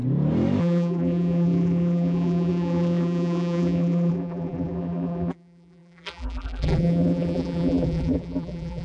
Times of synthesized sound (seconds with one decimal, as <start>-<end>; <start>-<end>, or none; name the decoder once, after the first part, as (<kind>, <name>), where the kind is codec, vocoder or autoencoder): 0.6-8.8 (vocoder, BigVGAN v2)